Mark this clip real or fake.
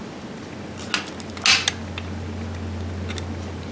real